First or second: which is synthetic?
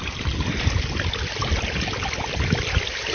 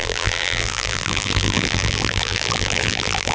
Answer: second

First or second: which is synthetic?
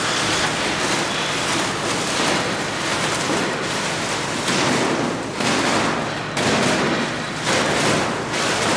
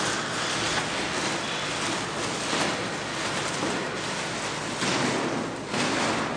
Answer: first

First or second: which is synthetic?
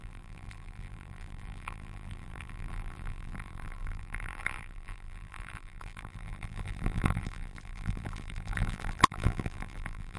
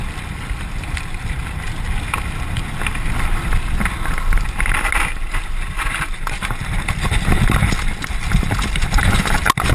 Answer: first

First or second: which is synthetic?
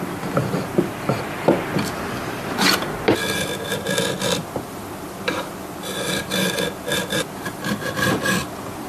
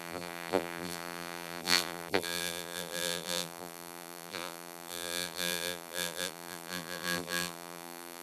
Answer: second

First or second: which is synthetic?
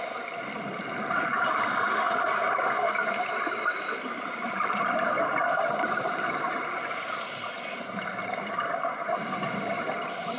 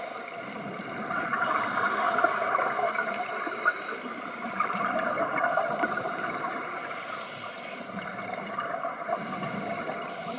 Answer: second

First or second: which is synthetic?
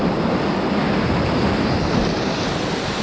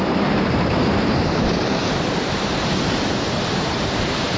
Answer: second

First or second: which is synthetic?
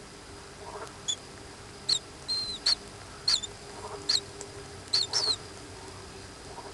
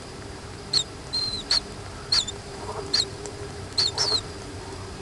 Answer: second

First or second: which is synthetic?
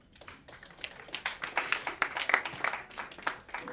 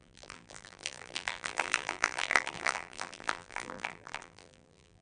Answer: second